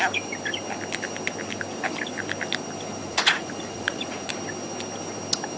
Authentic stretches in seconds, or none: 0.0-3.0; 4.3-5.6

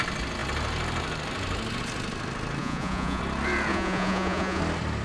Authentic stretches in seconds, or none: 0.0-2.6; 3.2-3.7; 4.6-5.0

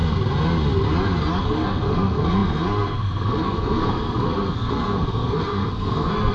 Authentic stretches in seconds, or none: 0.0-1.4

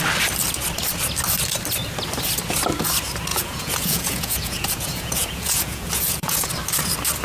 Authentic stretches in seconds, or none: 0.0-3.3; 6.5-7.2

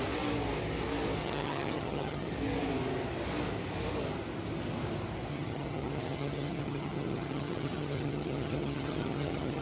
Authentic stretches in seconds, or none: 0.0-1.2; 2.3-5.3

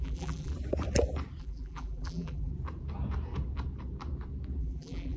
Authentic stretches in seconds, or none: 0.5-1.4; 2.5-4.6

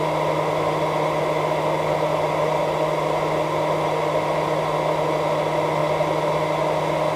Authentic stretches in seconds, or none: 0.0-7.2